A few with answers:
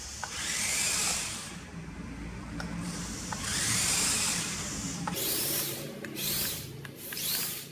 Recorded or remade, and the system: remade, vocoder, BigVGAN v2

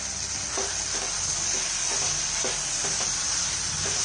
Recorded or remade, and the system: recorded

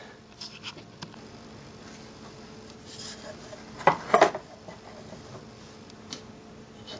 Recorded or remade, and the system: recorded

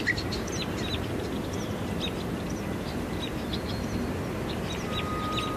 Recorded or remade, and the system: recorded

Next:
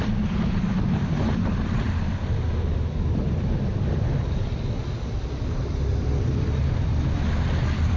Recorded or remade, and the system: remade, vocoder, BigVGAN v2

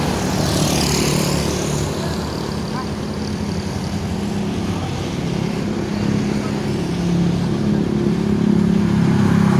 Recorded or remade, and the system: recorded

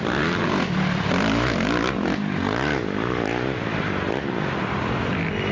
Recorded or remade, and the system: remade, vocoder, BigVGAN v2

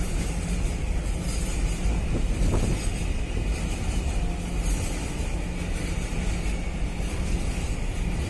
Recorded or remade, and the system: recorded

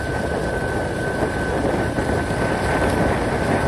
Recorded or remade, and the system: recorded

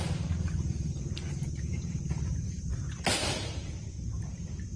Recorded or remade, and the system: remade, vocoder, BigVGAN v2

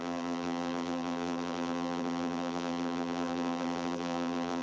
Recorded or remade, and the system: remade, vocoder, BigVGAN v2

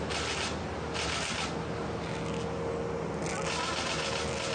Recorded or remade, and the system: recorded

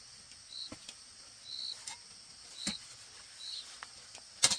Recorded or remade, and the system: recorded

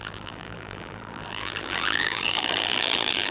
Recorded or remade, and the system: remade, vocoder, BigVGAN v2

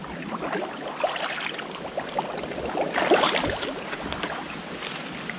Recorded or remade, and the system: recorded